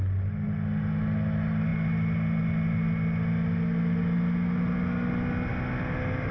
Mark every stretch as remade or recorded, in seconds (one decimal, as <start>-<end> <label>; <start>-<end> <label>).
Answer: 0.0-6.3 recorded